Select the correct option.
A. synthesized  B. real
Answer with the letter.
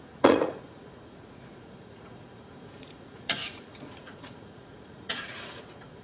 A